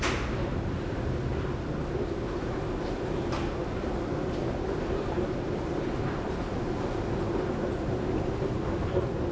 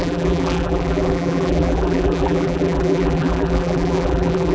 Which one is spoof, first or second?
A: second